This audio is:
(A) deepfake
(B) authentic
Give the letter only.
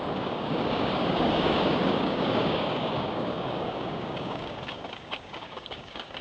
A